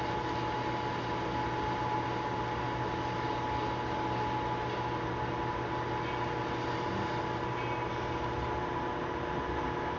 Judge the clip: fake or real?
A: real